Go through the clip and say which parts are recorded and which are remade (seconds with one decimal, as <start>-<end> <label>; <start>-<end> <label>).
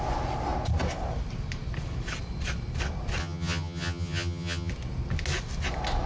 0.0-3.2 recorded; 3.2-4.7 remade; 4.7-6.1 recorded